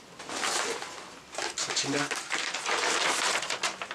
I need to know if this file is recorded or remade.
recorded